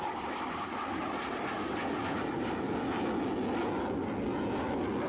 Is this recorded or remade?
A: recorded